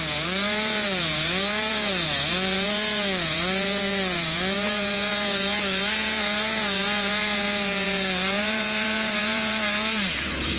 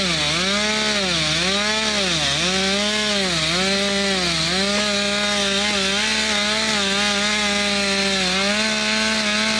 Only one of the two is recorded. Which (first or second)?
second